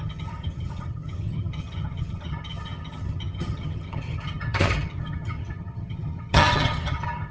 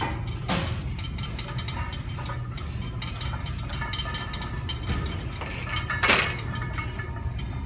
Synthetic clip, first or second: first